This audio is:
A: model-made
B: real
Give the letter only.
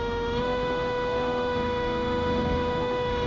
A